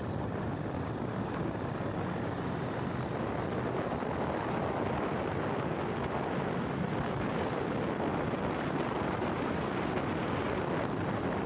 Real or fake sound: real